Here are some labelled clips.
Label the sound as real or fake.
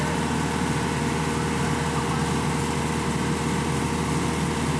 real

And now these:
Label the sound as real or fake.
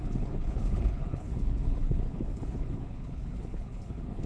fake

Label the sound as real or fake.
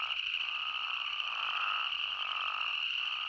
real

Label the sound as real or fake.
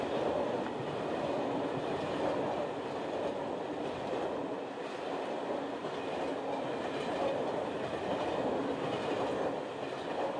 real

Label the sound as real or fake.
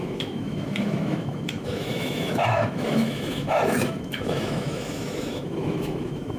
fake